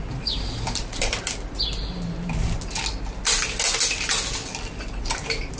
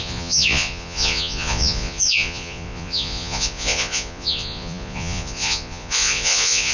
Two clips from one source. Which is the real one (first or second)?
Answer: first